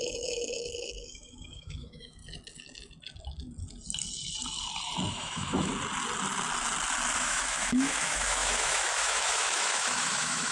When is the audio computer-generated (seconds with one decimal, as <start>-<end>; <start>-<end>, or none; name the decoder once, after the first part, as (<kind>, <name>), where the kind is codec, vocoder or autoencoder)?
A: 0.0-2.2 (autoencoder, DAC-VAE); 5.1-5.7; 7.2-10.5